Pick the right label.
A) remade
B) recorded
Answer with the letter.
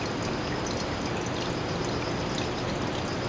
B